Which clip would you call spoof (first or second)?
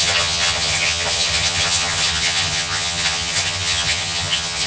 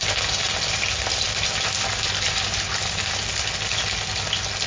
first